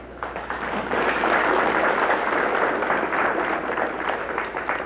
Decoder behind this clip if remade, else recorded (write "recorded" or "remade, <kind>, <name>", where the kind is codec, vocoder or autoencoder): recorded